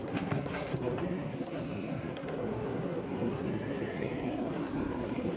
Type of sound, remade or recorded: remade